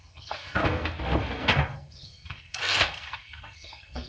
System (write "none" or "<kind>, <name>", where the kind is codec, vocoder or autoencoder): codec, SNAC